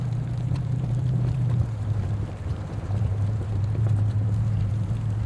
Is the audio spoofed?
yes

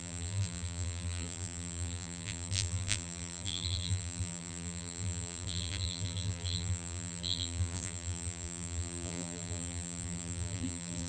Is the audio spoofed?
yes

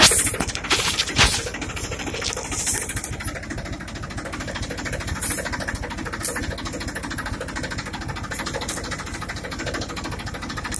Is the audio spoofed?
no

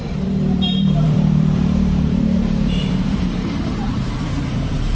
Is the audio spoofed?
yes